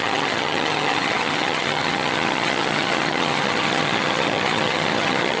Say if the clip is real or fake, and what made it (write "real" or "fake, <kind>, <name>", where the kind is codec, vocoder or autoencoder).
fake, vocoder, HiFi-GAN